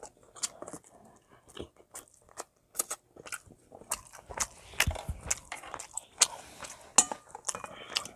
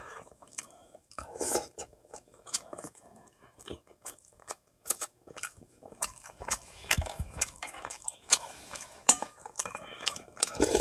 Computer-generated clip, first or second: second